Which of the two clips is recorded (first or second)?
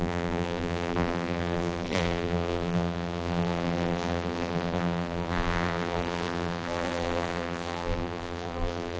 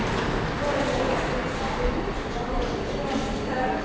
second